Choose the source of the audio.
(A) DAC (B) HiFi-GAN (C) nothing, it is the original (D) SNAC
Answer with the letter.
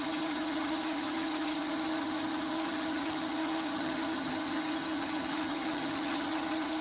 B